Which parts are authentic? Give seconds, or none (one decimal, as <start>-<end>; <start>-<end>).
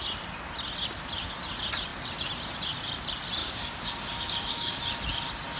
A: 0.0-3.4; 4.8-5.6